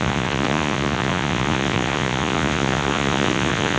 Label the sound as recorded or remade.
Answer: remade